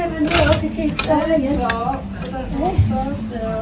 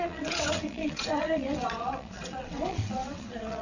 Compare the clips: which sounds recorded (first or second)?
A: first